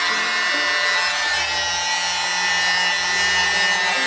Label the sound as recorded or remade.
recorded